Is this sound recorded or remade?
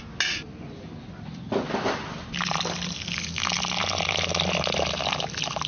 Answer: recorded